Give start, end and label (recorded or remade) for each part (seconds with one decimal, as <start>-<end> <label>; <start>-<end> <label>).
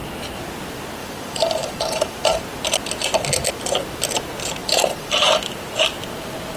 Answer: 0.0-1.0 recorded; 1.0-2.4 remade; 2.4-4.6 recorded; 4.6-5.4 remade; 5.4-6.6 recorded